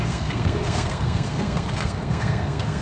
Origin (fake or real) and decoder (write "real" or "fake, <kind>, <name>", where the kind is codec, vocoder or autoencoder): fake, codec, SNAC